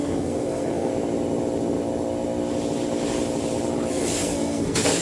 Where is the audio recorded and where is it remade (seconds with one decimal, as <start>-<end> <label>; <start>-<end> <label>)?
0.0-0.9 remade; 0.9-3.9 recorded; 3.9-5.0 remade